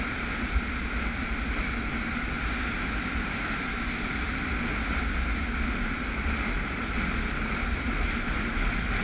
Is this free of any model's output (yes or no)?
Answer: yes